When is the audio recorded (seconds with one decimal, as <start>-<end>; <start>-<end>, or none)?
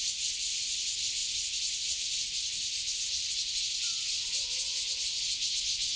0.0-6.0